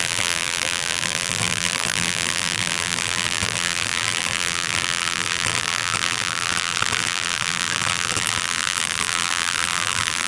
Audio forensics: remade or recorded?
remade